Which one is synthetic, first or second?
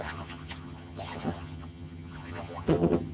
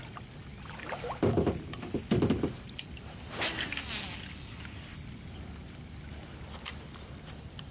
first